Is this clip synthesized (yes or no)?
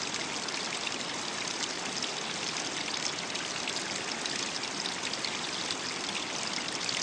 no